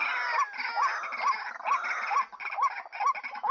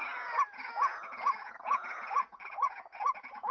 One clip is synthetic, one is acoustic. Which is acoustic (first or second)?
first